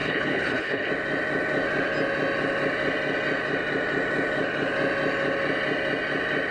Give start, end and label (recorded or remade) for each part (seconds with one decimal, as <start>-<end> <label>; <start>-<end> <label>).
0.0-0.9 remade; 0.9-6.5 recorded

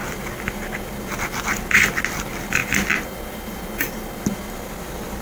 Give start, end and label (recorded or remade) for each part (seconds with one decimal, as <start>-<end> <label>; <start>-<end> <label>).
0.0-2.6 recorded; 2.6-4.2 remade; 4.2-5.2 recorded

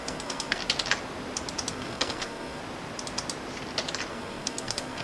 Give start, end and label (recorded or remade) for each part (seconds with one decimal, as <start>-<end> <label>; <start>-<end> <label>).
0.0-0.6 remade; 0.6-1.7 recorded; 1.7-2.6 remade; 2.6-4.1 recorded; 4.1-5.0 remade